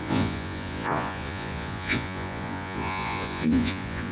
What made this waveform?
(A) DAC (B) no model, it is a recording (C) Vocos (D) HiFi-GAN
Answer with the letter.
C